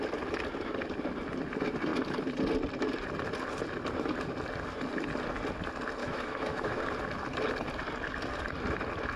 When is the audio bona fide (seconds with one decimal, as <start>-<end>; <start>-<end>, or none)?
0.0-6.0; 6.8-9.2